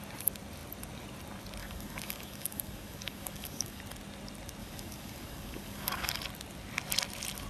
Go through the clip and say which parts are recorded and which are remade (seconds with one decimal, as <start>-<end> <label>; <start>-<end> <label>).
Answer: 0.0-1.6 recorded; 1.6-3.8 remade; 3.8-4.6 recorded; 4.6-6.2 remade; 6.2-7.5 recorded